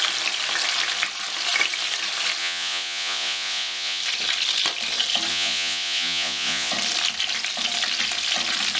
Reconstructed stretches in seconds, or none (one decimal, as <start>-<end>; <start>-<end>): 2.4-4.0; 5.3-6.7